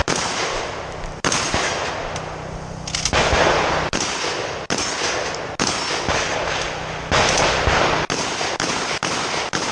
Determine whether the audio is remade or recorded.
recorded